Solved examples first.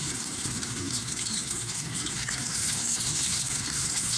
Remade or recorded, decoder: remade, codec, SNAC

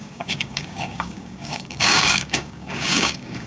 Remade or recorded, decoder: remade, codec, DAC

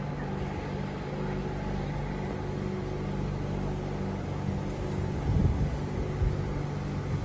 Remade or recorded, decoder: recorded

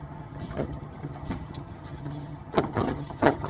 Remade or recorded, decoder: remade, vocoder, HiFi-GAN